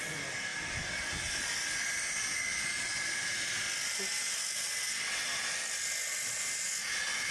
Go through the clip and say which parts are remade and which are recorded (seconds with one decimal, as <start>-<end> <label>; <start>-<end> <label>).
0.0-7.3 recorded